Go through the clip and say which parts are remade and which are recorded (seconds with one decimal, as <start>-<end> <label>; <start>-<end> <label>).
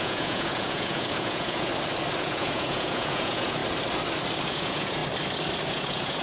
0.0-1.7 remade; 1.7-2.2 recorded; 2.2-3.6 remade; 3.6-4.5 recorded; 4.5-5.0 remade; 5.0-5.7 recorded; 5.7-6.2 remade